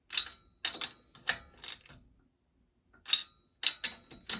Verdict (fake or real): real